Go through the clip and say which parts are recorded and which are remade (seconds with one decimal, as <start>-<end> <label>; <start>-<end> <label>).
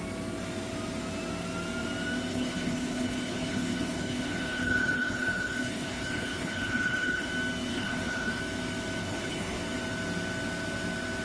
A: 0.0-2.3 recorded; 2.3-7.3 remade; 7.3-7.7 recorded; 7.7-8.4 remade; 8.4-9.0 recorded; 9.0-9.6 remade; 9.6-11.2 recorded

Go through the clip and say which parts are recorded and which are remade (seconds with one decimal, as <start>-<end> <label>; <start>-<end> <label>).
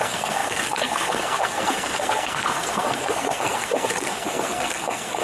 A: 0.0-5.2 remade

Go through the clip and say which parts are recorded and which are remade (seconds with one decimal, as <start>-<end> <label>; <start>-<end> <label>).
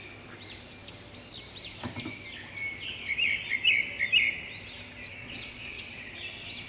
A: 0.0-5.2 recorded; 5.2-6.1 remade; 6.1-6.7 recorded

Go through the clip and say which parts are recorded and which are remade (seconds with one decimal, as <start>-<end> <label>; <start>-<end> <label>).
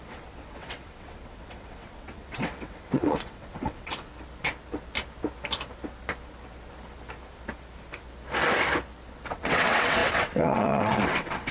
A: 0.0-4.1 remade; 4.1-9.3 recorded; 9.3-11.5 remade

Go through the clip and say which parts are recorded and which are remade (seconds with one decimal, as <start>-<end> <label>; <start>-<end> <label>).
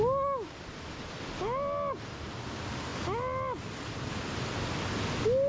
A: 0.0-5.5 recorded